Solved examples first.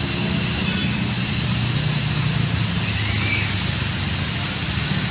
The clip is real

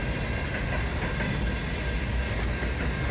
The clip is real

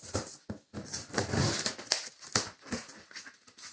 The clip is real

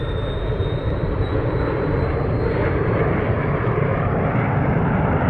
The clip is fake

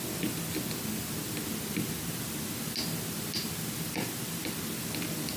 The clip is real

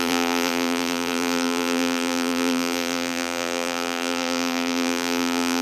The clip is fake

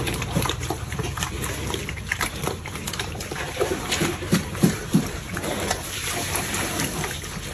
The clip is fake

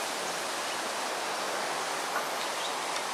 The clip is real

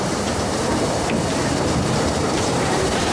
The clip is fake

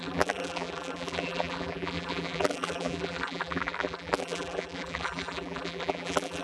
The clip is fake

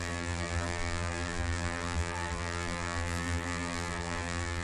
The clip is fake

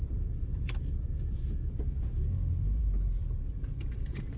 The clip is fake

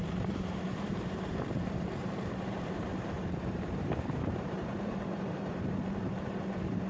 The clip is fake